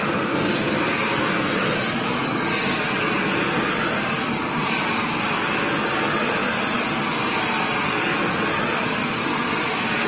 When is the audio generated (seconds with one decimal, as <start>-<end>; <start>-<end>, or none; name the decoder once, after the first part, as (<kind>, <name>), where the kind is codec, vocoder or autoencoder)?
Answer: none